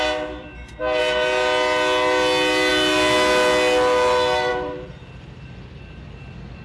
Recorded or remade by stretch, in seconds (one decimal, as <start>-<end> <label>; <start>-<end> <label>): 0.0-4.5 recorded; 4.5-5.0 remade; 5.0-6.6 recorded